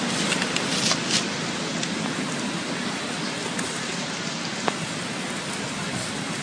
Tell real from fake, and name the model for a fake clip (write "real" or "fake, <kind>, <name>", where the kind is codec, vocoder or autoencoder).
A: real